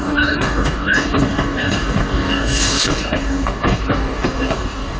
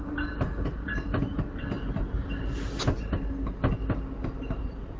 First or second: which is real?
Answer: second